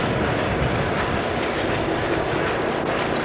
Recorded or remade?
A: recorded